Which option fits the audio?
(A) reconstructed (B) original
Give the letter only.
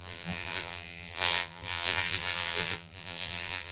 A